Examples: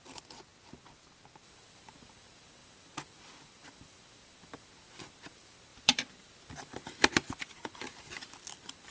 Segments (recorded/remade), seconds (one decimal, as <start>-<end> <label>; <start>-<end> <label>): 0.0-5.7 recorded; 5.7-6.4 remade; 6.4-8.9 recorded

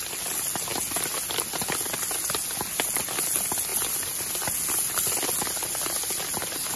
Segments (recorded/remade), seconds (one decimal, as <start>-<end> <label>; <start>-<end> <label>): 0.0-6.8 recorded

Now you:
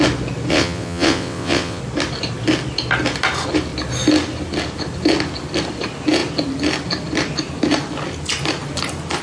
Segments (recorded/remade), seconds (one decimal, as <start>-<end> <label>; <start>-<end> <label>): 0.0-0.5 recorded; 0.5-1.8 remade; 1.8-9.2 recorded

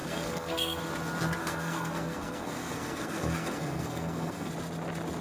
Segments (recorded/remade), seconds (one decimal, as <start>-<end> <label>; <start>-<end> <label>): 0.0-0.8 remade; 0.8-1.4 recorded; 1.4-4.5 remade; 4.5-5.2 recorded

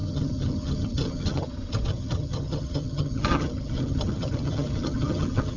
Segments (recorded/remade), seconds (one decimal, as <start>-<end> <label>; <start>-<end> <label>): 0.0-1.5 remade; 1.5-1.9 recorded; 1.9-5.6 remade

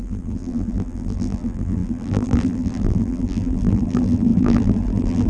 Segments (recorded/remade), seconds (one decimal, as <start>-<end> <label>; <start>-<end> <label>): 0.0-5.3 remade